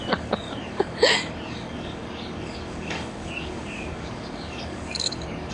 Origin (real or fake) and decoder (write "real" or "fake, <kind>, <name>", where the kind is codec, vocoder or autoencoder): fake, codec, DAC